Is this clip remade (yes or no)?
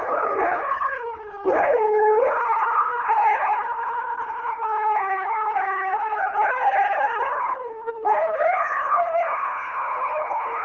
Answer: yes